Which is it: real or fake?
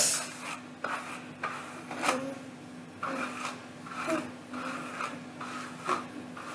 real